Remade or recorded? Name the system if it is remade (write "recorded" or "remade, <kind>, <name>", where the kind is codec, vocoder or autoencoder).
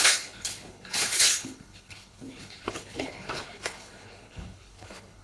remade, codec, HILCodec